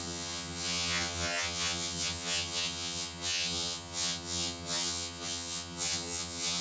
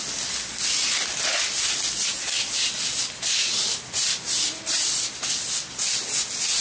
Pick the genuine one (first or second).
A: second